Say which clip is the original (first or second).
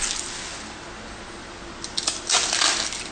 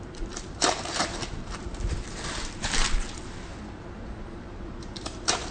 first